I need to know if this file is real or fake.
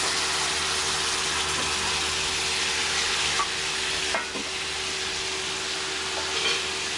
real